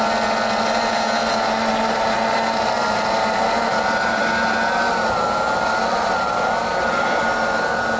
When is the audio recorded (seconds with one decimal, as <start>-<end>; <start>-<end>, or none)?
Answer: 0.0-8.0

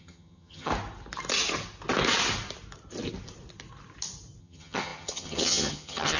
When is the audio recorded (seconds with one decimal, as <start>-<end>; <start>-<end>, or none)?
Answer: 0.7-4.4

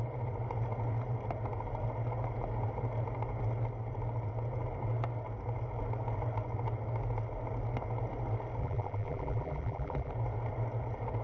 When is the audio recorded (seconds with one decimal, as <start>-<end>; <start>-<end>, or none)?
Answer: 0.0-8.6; 10.1-11.2

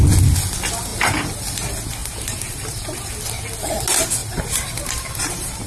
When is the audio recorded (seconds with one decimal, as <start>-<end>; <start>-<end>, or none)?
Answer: 0.0-0.9; 1.4-2.0; 3.1-4.2